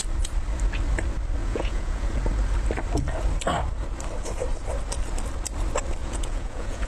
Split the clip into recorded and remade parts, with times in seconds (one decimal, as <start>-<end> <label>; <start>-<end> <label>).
0.0-1.4 recorded; 1.4-2.2 remade; 2.2-6.0 recorded; 6.0-6.9 remade